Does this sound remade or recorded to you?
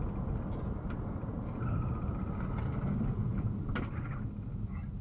recorded